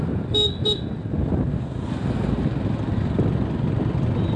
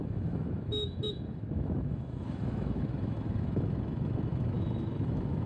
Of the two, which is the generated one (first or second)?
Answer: second